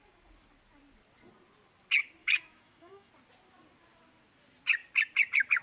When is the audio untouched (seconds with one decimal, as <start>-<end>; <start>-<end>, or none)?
0.0-2.2; 3.1-5.6